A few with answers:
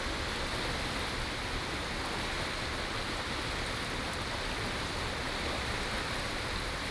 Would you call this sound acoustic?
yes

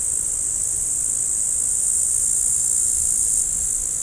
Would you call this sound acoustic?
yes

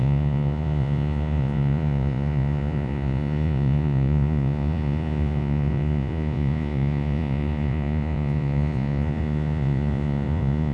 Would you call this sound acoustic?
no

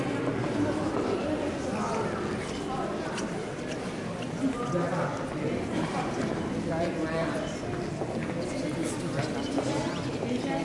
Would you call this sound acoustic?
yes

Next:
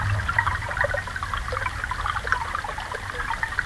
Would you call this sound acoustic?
yes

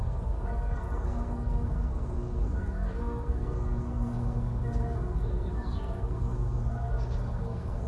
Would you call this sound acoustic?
no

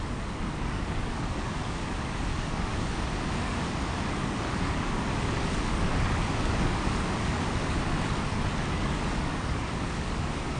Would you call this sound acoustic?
no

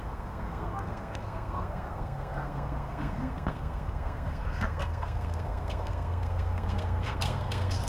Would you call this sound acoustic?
no